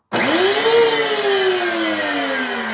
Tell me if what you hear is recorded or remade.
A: recorded